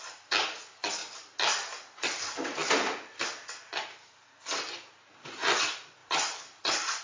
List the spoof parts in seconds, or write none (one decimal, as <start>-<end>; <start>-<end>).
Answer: none